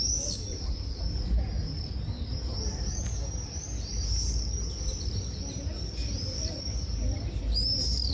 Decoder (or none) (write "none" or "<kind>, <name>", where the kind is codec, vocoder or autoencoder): none